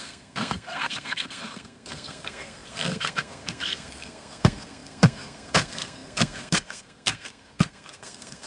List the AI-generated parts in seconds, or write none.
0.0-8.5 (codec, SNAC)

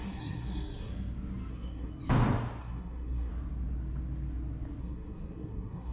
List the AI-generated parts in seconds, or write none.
0.0-0.9 (codec, SNAC); 1.5-1.9; 2.6-3.3; 4.8-5.9

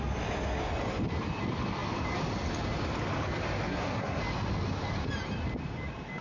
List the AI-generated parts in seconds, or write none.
3.7-4.2 (codec, SNAC)

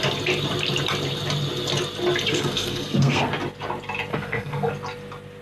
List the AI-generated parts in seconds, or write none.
2.3-3.3 (codec, SNAC); 4.1-4.7

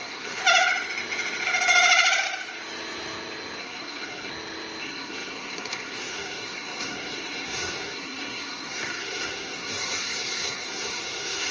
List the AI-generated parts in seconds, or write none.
0.0-0.4 (codec, SNAC); 3.6-4.3; 4.8-11.5

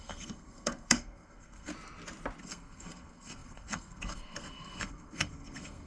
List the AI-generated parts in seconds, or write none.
0.0-1.7 (codec, SNAC); 2.4-5.9

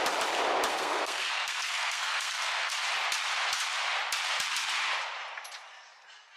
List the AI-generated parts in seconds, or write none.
0.7-2.7 (codec, SNAC)

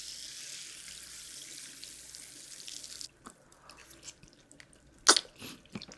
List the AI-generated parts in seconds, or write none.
none